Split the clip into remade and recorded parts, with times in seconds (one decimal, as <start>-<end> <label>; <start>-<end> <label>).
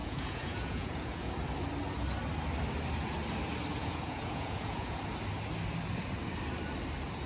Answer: 0.0-1.3 remade; 1.3-3.8 recorded; 3.8-5.0 remade; 5.0-7.3 recorded